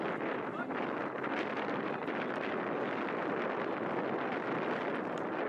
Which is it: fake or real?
real